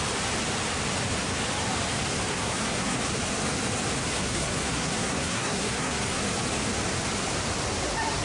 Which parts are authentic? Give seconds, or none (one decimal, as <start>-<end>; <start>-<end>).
0.0-2.3; 3.0-4.0; 6.2-8.2